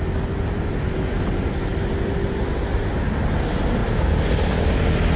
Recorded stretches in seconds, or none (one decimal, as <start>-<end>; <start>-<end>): 0.0-5.2